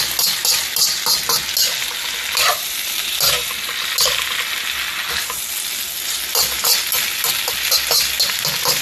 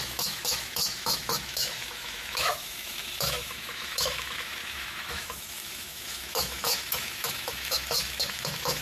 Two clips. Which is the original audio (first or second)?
first